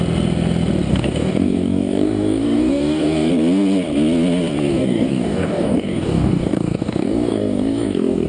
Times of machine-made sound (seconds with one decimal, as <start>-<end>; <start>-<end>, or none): 0.9-3.3; 4.7-8.3